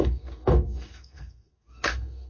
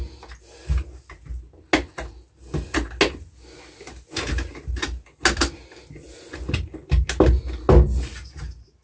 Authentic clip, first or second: second